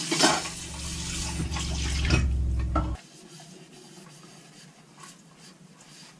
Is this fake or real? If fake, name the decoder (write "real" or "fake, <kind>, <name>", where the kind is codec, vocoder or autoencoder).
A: real